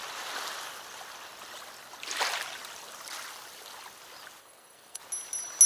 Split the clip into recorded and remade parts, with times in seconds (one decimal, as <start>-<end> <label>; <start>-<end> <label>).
0.0-4.4 recorded; 4.4-5.0 remade; 5.0-5.7 recorded